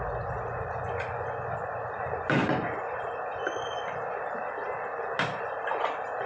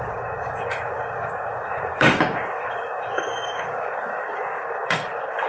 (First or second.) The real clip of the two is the first